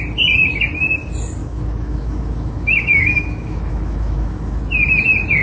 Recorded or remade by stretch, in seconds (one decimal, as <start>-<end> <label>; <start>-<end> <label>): 0.0-1.4 recorded; 1.4-4.6 remade; 4.6-5.4 recorded